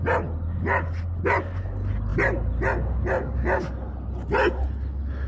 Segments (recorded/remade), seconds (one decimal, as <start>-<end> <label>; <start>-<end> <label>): 0.0-5.3 recorded